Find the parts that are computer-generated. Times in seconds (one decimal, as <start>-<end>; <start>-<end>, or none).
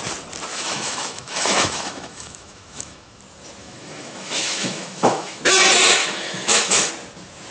0.5-3.2; 3.6-5.4; 6.0-6.9